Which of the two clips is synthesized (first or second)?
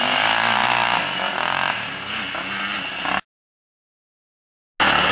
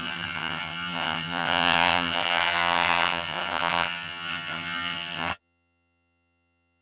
second